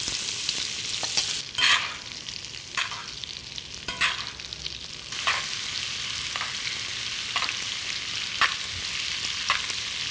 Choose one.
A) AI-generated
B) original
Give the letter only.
B